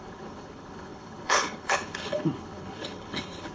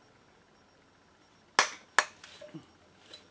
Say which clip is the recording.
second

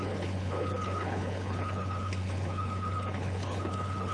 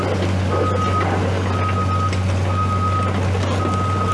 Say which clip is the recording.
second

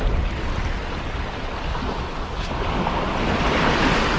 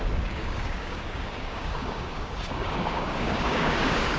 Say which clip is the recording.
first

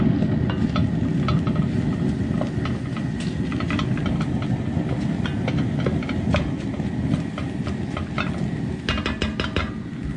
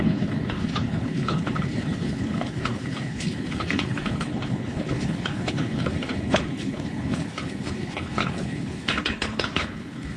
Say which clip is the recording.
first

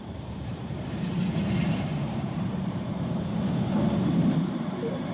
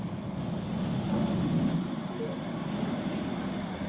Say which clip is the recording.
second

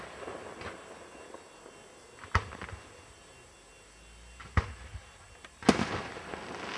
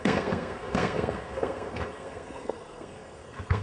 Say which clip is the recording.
first